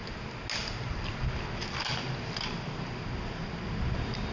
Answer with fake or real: real